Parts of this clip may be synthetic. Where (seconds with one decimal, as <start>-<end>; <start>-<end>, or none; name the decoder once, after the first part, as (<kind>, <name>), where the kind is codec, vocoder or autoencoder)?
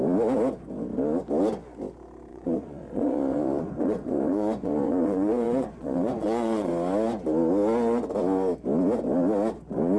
2.3-6.7 (vocoder, Vocos)